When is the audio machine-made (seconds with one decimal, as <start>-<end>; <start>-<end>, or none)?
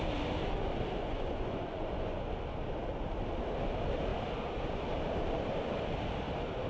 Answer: 1.0-2.2